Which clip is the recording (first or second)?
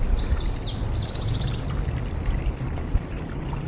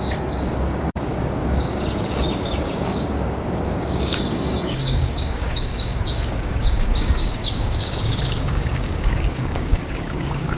first